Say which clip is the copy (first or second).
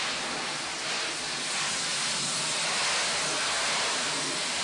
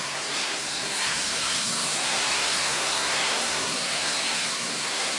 second